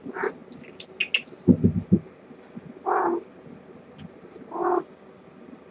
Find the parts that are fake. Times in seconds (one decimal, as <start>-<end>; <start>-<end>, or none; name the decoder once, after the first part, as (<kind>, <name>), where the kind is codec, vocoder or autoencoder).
none